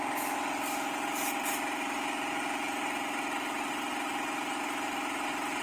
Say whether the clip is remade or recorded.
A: remade